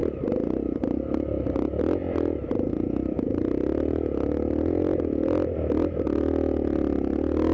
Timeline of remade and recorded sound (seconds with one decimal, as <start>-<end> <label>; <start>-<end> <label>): 0.0-7.5 recorded